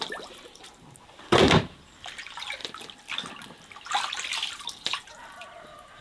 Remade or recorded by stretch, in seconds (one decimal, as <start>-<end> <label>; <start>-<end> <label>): 0.0-2.6 remade; 2.6-4.5 recorded; 4.5-6.0 remade